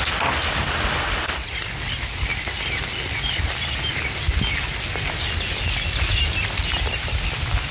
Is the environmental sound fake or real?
real